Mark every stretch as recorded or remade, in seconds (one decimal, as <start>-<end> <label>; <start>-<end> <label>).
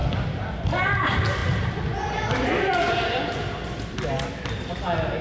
0.0-5.2 recorded